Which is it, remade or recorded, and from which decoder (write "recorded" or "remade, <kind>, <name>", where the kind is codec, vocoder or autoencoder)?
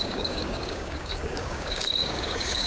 remade, codec, DAC